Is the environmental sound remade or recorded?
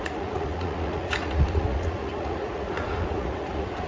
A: remade